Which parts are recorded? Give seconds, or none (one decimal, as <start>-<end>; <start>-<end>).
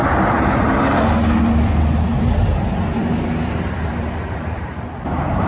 0.7-3.0; 4.8-5.5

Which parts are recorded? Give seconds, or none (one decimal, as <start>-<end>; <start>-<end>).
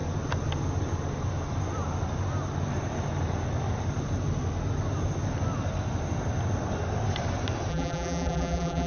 0.0-7.7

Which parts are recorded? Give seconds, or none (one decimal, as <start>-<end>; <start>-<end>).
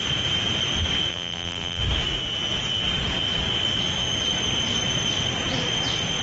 0.0-1.1; 1.8-6.2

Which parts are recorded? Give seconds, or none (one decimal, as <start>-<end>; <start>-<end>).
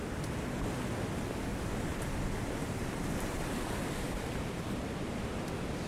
0.0-1.5; 2.1-2.6; 4.6-5.9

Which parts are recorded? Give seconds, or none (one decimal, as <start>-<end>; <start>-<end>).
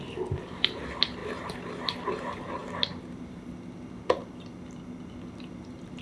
0.0-1.2; 1.7-6.0